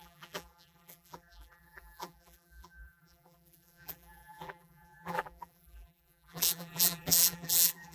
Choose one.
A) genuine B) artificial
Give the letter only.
B